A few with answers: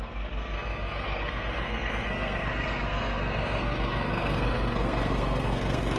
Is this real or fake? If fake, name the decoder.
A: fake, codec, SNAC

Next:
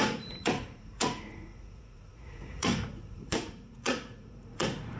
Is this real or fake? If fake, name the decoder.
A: fake, vocoder, Vocos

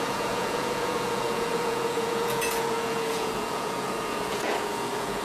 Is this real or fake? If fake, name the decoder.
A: fake, vocoder, Vocos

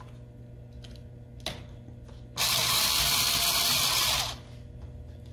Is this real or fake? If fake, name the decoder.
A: real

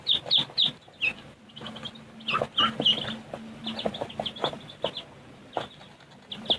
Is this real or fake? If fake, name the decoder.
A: real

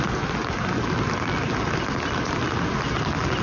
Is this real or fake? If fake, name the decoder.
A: real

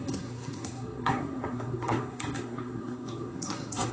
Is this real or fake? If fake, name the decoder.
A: fake, codec, SNAC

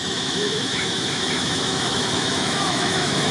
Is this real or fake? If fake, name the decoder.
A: fake, autoencoder, DAC-VAE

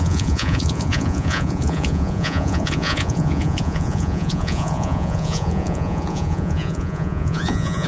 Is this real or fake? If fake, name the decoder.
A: fake, vocoder, Vocos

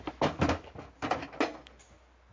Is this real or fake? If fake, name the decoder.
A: real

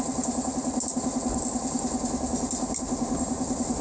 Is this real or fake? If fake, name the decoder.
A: real